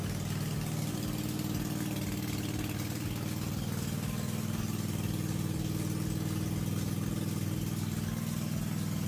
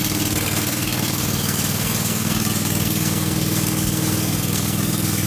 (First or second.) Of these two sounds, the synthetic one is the second